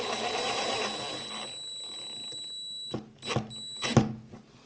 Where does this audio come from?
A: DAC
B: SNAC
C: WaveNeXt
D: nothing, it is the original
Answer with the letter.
D